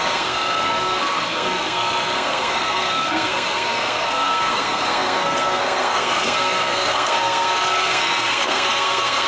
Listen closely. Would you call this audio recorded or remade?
remade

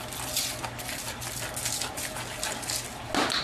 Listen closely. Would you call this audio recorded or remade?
recorded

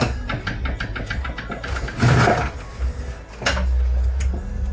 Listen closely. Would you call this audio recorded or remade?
recorded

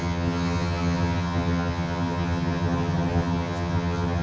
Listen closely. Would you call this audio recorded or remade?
remade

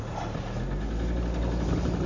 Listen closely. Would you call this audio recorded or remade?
recorded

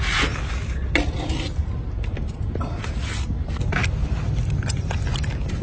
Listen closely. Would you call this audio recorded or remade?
recorded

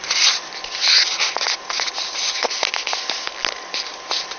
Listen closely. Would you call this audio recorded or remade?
recorded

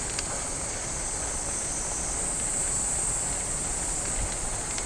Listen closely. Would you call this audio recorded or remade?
recorded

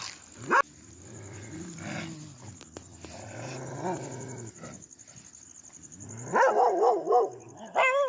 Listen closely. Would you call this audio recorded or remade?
recorded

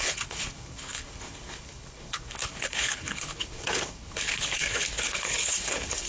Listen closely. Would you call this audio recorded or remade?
remade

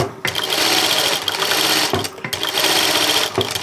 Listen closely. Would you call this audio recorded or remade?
recorded